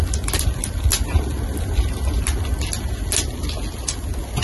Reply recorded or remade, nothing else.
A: recorded